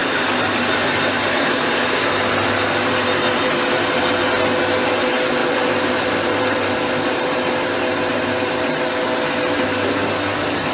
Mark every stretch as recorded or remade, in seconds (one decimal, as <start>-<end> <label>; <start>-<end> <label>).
0.0-1.8 remade; 1.8-5.4 recorded; 5.4-7.8 remade; 7.8-10.7 recorded